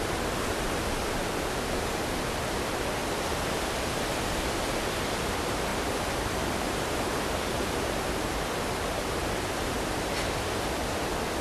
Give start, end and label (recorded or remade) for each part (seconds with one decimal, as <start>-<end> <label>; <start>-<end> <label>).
0.0-5.7 recorded; 5.7-8.4 remade; 8.4-11.4 recorded

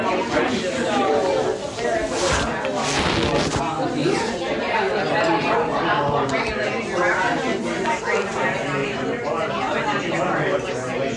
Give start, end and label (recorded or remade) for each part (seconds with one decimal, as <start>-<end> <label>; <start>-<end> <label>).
0.0-4.0 recorded; 4.0-8.0 remade; 8.0-8.8 recorded; 8.8-10.7 remade; 10.7-11.2 recorded

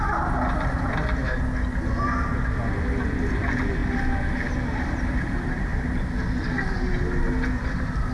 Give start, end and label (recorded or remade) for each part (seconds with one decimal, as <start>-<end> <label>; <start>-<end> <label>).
0.0-1.2 remade; 1.2-2.0 recorded; 2.0-5.7 remade; 5.7-7.6 recorded; 7.6-8.1 remade

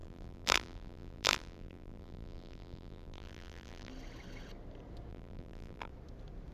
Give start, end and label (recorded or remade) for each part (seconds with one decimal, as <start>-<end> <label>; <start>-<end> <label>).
0.0-3.9 remade; 3.9-5.1 recorded; 5.1-5.9 remade; 5.9-6.5 recorded

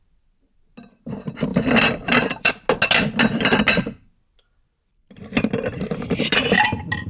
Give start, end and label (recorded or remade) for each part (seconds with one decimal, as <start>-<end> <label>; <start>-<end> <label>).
0.0-1.5 recorded; 1.5-2.5 remade; 2.5-4.9 recorded; 4.9-6.6 remade; 6.6-7.1 recorded

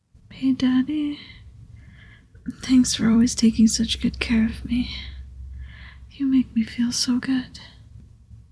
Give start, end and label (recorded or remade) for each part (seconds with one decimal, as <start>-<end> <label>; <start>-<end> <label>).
0.0-3.0 recorded; 3.0-3.6 remade; 3.6-8.5 recorded